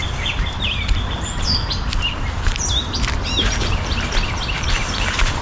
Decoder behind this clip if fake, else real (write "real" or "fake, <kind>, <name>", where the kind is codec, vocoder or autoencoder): real